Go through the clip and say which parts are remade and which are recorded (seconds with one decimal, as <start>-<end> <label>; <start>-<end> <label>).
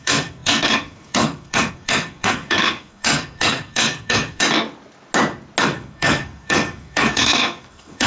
0.0-4.4 remade; 4.4-5.6 recorded; 5.6-8.1 remade